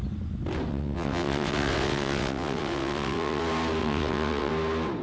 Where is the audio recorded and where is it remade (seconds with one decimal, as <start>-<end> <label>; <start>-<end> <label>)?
0.0-0.7 recorded; 0.7-3.4 remade; 3.4-3.8 recorded; 3.8-4.5 remade; 4.5-5.0 recorded